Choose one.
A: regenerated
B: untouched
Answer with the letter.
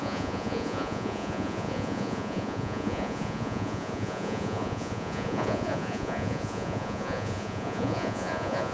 A